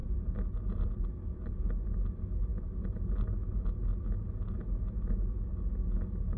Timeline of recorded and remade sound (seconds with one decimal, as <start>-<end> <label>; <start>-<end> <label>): 0.0-6.4 recorded